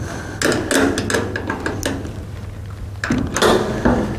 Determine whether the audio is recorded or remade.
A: recorded